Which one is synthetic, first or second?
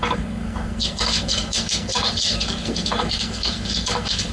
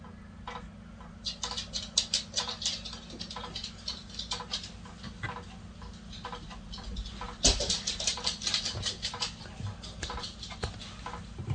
first